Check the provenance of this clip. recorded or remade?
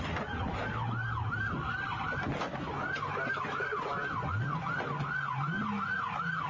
recorded